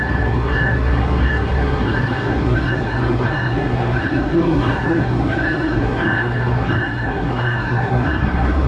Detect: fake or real fake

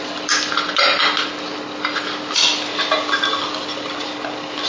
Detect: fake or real real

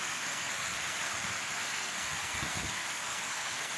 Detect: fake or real fake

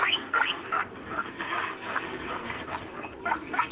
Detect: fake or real fake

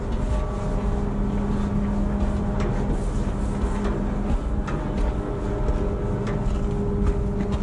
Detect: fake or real real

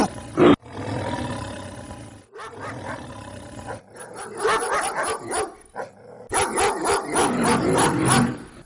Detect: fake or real real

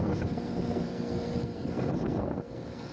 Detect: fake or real fake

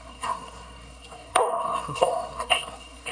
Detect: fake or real fake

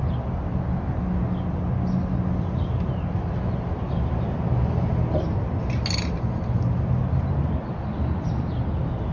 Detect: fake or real real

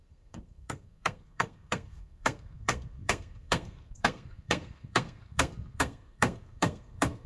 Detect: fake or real fake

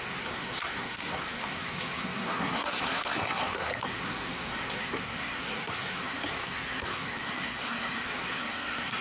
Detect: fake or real fake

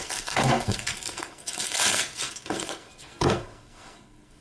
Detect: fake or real fake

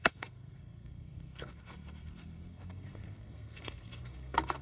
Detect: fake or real fake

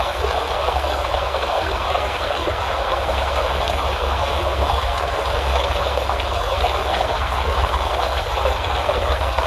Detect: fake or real fake